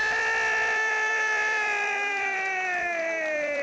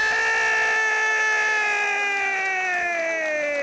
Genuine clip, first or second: second